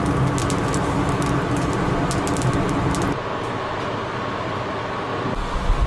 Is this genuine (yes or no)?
yes